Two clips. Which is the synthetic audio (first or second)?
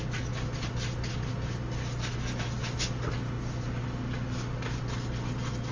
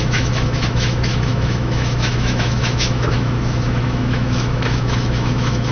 second